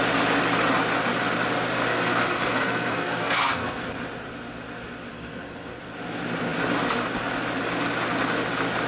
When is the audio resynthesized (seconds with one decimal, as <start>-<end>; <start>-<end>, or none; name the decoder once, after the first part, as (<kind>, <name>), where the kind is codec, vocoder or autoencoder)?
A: 1.9-3.9 (codec, SNAC); 5.1-5.8